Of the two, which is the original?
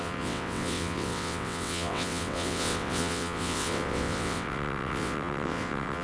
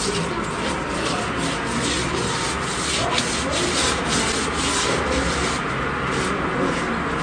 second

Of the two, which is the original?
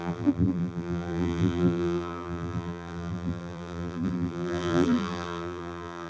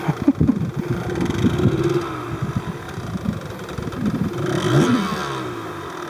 second